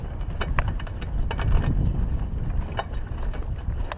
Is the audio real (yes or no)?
yes